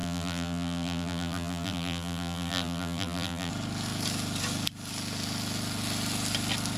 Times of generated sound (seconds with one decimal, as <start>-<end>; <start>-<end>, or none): 0.0-3.5